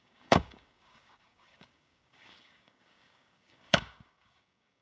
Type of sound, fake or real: fake